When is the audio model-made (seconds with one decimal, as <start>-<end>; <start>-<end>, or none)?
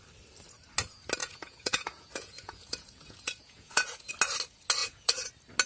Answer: 1.2-4.1; 4.8-5.3